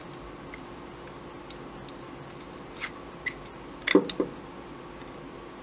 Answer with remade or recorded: recorded